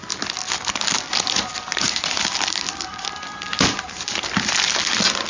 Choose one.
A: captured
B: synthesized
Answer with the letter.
A